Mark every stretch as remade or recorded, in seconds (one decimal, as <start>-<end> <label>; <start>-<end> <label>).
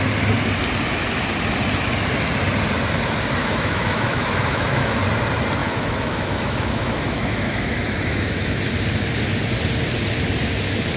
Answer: 0.0-3.4 recorded; 3.4-5.0 remade; 5.0-5.6 recorded; 5.6-8.6 remade; 8.6-11.0 recorded